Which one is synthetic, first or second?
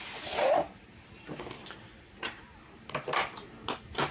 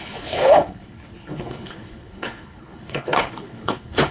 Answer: second